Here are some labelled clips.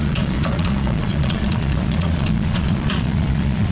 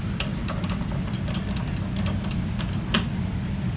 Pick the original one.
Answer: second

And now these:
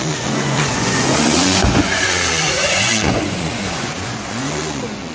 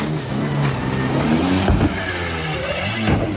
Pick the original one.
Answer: second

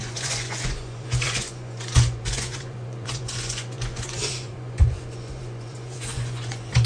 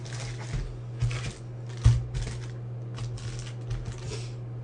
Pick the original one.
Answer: second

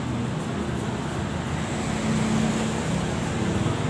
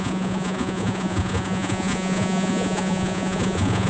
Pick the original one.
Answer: first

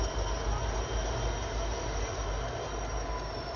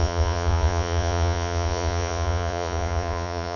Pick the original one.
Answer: first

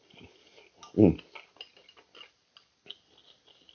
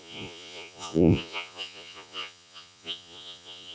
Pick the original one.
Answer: first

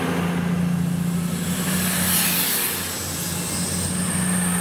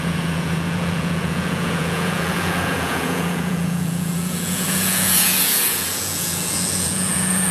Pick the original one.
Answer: first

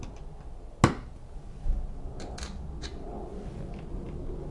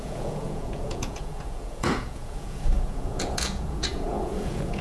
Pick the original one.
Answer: first